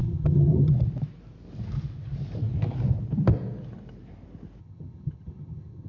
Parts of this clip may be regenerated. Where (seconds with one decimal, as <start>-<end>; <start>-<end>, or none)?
0.0-0.7; 4.6-5.9